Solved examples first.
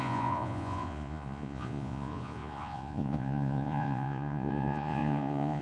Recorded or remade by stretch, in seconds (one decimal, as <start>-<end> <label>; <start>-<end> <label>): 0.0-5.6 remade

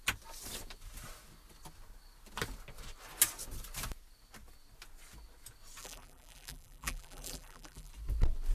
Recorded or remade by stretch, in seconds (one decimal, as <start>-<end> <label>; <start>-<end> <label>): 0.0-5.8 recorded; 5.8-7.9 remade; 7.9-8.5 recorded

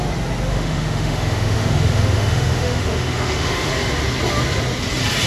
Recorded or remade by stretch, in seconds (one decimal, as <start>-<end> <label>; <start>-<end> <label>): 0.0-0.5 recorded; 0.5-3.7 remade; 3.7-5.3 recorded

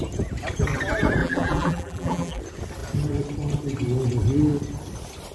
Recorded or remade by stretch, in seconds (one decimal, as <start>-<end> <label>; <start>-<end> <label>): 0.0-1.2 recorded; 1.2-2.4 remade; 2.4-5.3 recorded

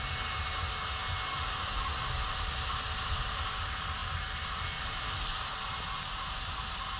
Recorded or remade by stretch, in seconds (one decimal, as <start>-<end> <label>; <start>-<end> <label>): 0.0-4.0 recorded; 4.0-5.5 remade; 5.5-7.0 recorded

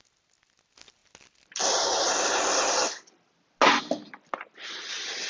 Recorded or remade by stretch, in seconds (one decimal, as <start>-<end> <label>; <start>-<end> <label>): 0.0-5.3 recorded